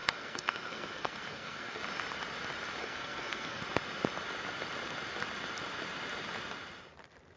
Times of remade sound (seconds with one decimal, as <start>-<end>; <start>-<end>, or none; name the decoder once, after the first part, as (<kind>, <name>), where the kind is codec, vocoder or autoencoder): 0.0-1.8 (codec, SNAC); 2.8-3.6